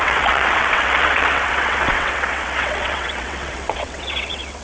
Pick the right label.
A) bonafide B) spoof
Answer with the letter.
B